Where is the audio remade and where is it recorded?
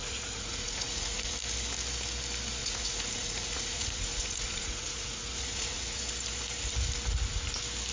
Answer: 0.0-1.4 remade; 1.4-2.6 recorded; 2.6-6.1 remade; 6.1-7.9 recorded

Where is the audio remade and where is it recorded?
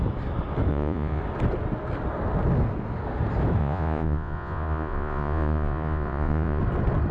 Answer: 0.0-0.7 recorded; 0.7-1.2 remade; 1.2-3.6 recorded; 3.6-6.6 remade; 6.6-7.1 recorded